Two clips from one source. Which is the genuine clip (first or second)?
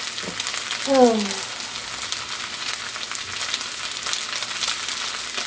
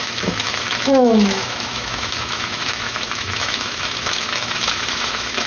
first